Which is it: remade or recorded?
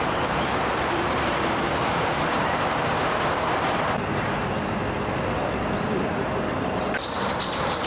remade